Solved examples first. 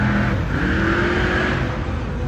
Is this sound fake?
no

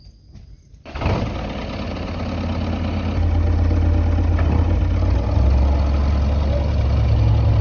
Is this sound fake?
no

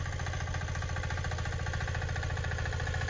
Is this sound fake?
no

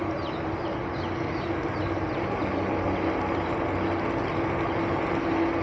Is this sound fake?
no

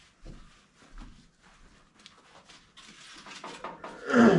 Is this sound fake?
no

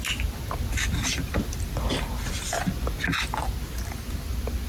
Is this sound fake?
no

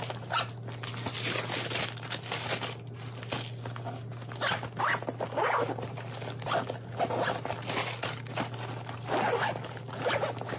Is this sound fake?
no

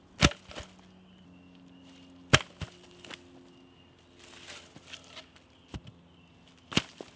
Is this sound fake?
no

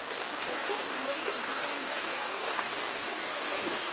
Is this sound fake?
yes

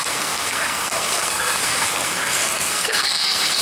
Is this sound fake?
yes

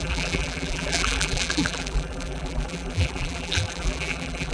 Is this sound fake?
yes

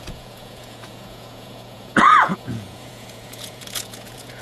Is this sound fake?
yes